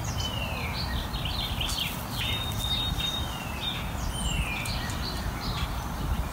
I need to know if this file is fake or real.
real